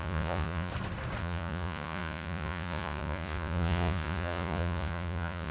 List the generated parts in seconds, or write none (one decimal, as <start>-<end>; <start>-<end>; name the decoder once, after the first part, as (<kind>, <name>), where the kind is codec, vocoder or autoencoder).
0.0-0.7 (vocoder, Vocos); 1.2-5.5